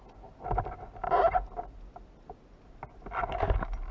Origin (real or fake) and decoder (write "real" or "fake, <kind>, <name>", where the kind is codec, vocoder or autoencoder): real